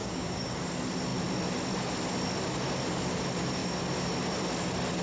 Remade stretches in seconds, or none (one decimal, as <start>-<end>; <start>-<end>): 0.0-0.6